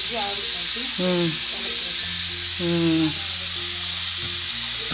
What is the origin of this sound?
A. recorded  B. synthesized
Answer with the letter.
A